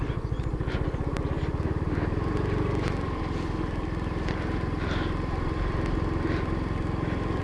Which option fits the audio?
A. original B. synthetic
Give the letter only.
A